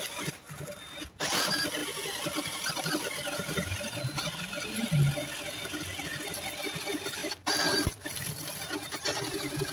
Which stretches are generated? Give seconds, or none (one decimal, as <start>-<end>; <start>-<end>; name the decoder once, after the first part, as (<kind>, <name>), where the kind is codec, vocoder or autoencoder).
7.2-8.7 (vocoder, BigVGAN v2)